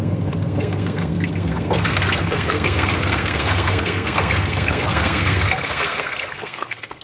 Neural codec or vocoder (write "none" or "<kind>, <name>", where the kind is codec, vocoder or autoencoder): codec, SNAC